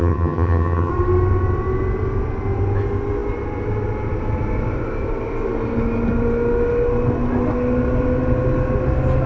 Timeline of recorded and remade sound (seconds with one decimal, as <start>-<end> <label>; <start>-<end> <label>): 0.0-0.9 remade; 0.9-9.3 recorded